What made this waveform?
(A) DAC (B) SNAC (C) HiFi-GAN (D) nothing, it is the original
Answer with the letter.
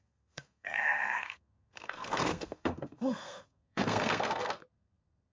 B